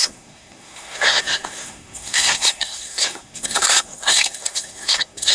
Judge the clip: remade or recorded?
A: remade